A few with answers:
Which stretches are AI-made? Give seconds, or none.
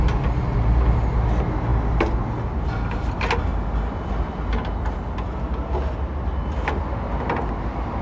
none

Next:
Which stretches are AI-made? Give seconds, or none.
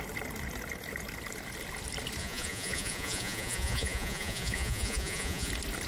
2.2-5.5 (vocoder, Vocos)